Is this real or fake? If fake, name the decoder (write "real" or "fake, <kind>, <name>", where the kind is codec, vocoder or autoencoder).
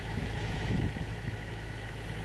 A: fake, autoencoder, DAC-VAE